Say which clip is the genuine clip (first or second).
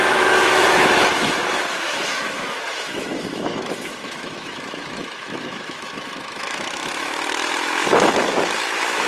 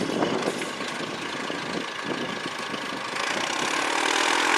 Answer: second